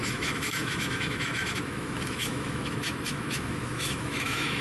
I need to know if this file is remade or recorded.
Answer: remade